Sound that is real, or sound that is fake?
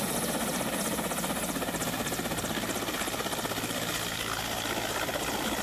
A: real